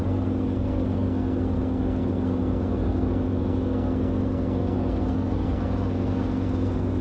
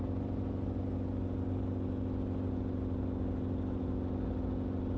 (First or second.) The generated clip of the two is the first